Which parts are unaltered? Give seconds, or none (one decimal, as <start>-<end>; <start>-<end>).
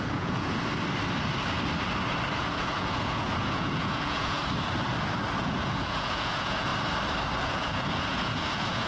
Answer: 0.6-2.4; 4.4-5.4; 6.7-7.4